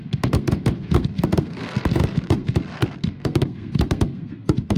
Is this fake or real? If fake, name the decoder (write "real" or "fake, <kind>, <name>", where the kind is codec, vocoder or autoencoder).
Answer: fake, codec, SNAC